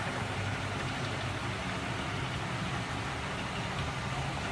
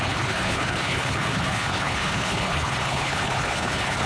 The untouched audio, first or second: first